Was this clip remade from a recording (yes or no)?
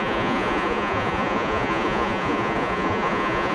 yes